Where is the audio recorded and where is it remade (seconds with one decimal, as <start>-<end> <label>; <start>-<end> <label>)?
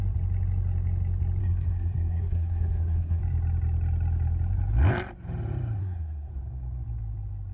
0.0-1.4 recorded; 1.4-3.2 remade; 3.2-5.8 recorded; 5.8-6.3 remade; 6.3-7.5 recorded